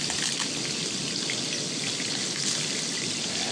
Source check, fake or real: real